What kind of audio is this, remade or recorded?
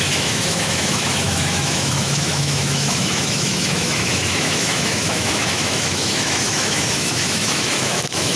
remade